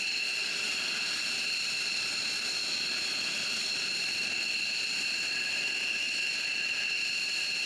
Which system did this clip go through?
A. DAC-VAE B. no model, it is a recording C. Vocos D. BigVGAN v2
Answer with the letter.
D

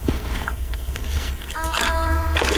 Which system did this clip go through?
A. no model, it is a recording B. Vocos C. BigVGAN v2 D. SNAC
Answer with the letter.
D